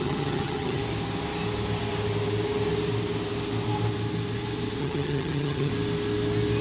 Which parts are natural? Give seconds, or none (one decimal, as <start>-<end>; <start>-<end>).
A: 0.8-4.8; 5.7-6.6